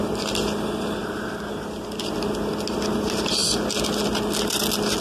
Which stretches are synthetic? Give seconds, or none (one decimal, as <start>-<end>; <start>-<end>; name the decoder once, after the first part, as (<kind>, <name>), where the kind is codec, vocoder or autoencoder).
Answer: 1.0-1.9 (vocoder, BigVGAN v2); 3.4-4.0